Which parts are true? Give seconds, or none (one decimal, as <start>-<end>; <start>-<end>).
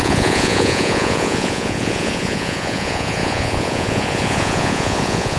none